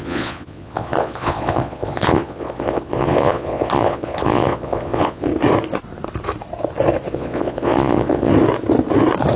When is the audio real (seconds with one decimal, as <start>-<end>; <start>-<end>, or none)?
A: 5.3-7.1; 8.3-9.4